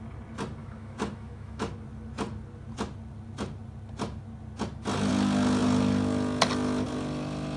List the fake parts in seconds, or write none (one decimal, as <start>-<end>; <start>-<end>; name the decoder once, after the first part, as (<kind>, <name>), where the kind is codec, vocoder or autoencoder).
0.6-1.7 (autoencoder, DAC-VAE)